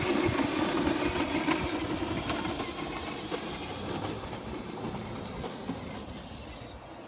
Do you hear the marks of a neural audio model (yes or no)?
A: no